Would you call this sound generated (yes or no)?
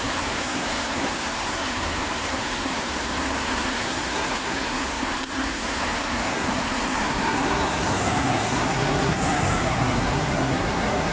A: yes